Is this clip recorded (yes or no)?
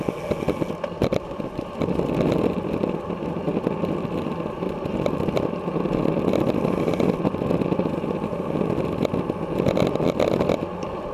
yes